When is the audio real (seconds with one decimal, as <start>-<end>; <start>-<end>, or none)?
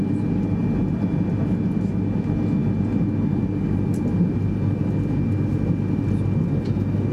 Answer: 0.0-7.1